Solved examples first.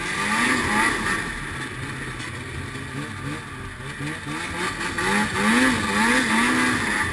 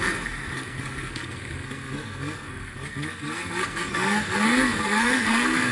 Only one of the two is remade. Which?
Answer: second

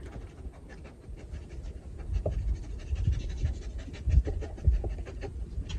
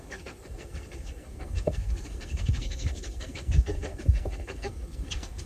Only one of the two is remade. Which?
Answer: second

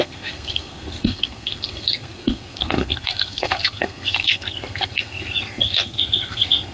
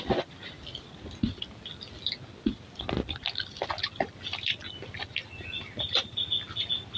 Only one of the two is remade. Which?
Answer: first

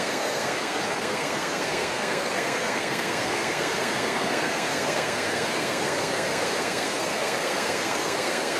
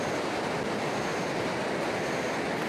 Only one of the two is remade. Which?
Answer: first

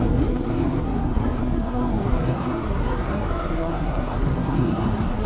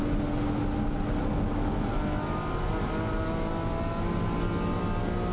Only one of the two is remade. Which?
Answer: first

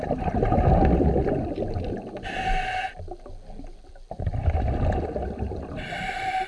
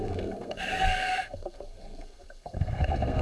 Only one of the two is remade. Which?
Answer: second